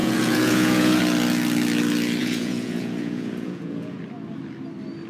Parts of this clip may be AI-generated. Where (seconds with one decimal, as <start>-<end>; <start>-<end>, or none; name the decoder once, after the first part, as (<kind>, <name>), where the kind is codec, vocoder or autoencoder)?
0.0-1.0 (vocoder, Vocos); 2.2-4.0